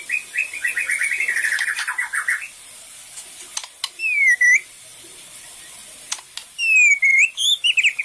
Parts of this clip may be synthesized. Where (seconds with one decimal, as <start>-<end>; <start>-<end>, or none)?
0.0-3.0; 4.8-5.8